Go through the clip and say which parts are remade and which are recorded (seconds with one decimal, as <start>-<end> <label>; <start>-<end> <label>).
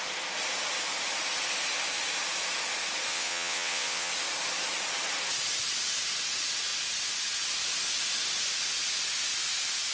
0.0-3.1 recorded; 3.1-4.1 remade; 4.1-9.9 recorded